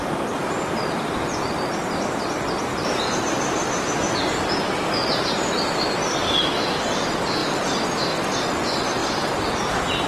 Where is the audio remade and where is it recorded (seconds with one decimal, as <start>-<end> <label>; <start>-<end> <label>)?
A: 0.0-2.7 recorded; 2.7-4.9 remade; 4.9-7.4 recorded; 7.4-8.0 remade; 8.0-10.1 recorded